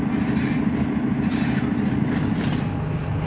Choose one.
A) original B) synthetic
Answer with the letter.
A